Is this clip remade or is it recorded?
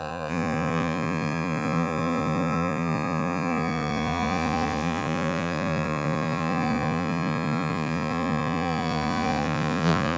remade